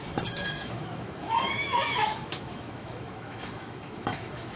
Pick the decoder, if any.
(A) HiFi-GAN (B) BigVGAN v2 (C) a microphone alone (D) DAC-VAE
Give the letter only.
D